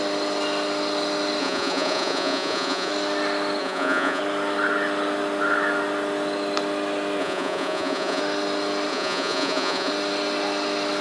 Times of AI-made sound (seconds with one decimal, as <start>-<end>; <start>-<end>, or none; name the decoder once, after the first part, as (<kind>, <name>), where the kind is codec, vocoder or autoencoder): 1.4-2.9 (vocoder, Vocos); 3.6-4.2; 7.2-8.2; 8.9-9.9